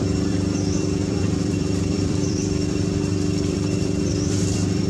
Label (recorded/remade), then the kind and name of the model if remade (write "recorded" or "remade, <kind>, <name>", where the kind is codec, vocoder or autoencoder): remade, vocoder, BigVGAN v2